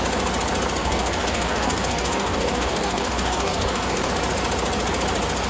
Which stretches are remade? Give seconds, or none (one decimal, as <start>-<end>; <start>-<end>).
0.8-4.1